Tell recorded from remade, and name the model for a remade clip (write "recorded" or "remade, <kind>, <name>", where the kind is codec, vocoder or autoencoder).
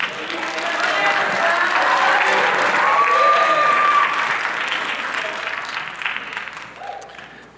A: recorded